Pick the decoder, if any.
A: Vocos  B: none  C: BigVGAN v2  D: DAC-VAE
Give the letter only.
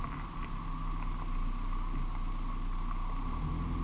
B